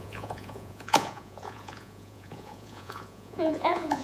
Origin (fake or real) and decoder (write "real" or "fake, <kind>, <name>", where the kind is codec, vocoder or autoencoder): fake, vocoder, Vocos